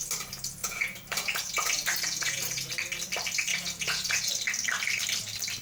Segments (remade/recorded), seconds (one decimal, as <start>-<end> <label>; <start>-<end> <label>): 0.0-0.6 recorded; 0.6-2.7 remade; 2.7-3.5 recorded; 3.5-4.3 remade; 4.3-5.6 recorded